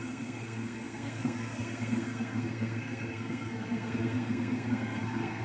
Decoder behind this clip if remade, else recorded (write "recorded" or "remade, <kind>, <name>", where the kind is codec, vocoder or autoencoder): remade, codec, SNAC